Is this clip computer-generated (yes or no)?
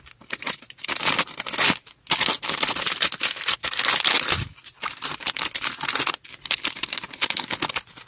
no